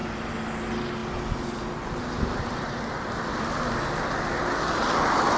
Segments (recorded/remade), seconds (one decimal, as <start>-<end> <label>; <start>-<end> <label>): 0.0-5.4 recorded